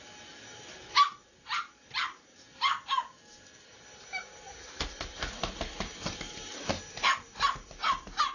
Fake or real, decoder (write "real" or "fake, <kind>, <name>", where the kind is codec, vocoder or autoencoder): real